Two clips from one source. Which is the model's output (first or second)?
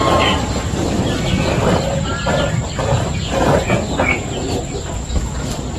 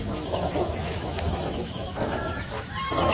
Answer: second